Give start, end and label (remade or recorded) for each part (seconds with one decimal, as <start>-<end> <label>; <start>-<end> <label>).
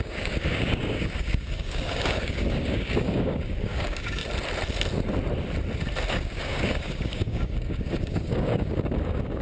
0.0-4.2 remade; 4.2-6.1 recorded; 6.1-9.4 remade